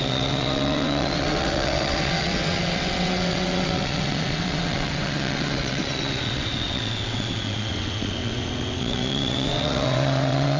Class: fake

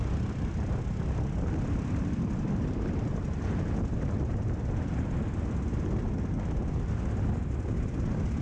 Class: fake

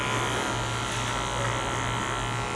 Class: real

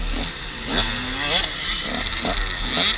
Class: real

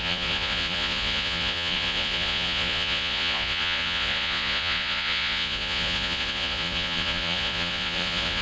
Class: fake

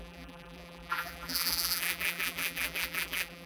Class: fake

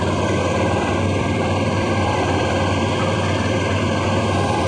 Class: fake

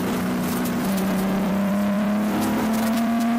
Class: fake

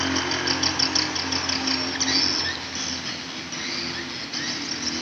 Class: real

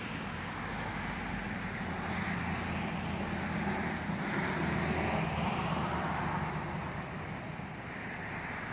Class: real